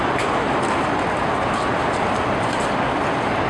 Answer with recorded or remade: recorded